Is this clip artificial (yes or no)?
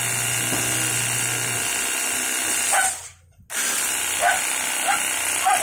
no